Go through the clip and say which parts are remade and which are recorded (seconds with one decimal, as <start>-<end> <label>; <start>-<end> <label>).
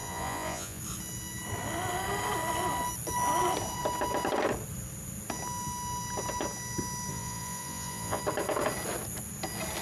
0.0-0.8 remade; 0.8-7.1 recorded; 7.1-8.2 remade; 8.2-9.8 recorded